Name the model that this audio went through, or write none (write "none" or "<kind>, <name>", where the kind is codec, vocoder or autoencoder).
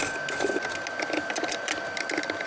none